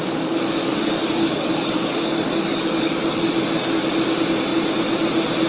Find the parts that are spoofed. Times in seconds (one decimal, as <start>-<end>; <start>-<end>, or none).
0.0-3.3